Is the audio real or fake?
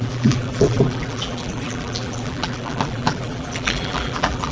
fake